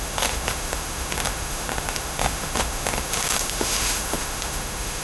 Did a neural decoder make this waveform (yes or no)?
yes